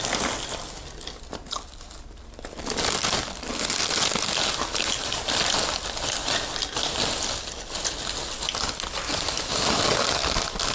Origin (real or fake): real